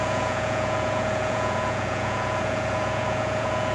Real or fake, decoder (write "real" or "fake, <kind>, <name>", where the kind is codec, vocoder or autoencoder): fake, vocoder, Vocos